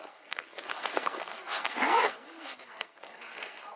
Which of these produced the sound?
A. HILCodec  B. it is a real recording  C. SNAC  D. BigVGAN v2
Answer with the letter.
C